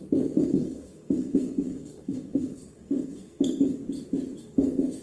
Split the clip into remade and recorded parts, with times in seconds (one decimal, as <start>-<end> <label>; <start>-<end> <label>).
0.0-3.8 remade; 3.8-4.4 recorded; 4.4-5.0 remade